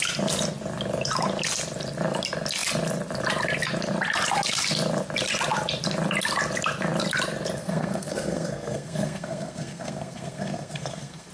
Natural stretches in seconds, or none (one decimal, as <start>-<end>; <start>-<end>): 0.0-7.6